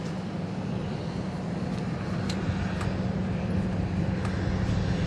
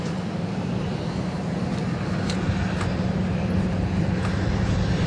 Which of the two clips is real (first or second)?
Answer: first